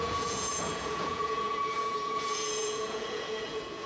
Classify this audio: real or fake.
fake